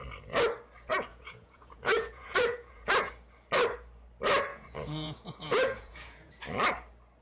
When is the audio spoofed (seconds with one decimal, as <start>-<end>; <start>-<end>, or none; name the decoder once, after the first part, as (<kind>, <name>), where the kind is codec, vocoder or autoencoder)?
1.1-3.1 (vocoder, Vocos); 4.5-6.3